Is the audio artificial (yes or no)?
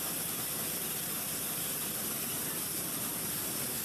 no